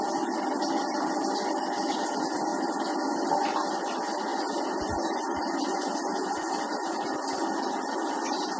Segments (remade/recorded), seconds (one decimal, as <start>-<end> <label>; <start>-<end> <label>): 0.0-8.6 recorded